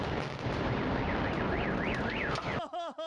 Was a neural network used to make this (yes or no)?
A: no